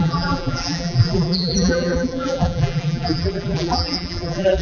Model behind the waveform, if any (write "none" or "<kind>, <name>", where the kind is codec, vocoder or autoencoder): vocoder, BigVGAN v2